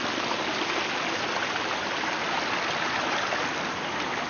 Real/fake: real